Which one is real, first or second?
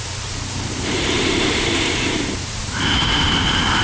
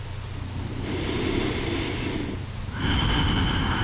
second